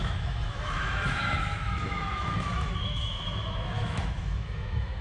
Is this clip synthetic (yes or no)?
yes